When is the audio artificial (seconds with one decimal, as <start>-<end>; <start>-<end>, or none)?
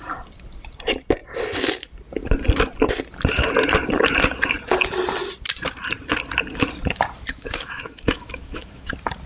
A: 7.3-8.9